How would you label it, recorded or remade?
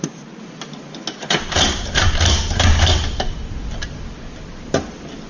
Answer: recorded